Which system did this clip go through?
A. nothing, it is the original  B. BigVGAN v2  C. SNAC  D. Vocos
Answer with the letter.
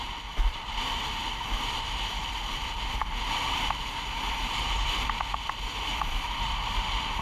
B